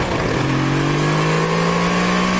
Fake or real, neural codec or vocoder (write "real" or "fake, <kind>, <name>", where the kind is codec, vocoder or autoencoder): real